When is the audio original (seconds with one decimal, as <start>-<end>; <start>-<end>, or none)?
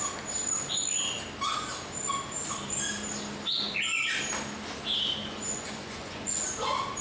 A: 0.0-5.2; 6.5-7.0